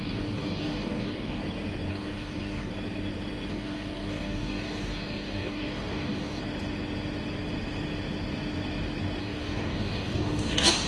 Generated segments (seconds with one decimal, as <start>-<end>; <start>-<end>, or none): 0.0-1.4; 1.9-2.7; 3.5-6.4; 9.2-10.9